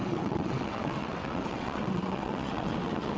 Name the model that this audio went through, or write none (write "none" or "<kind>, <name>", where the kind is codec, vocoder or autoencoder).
vocoder, WaveNeXt